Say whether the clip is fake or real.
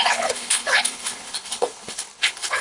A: fake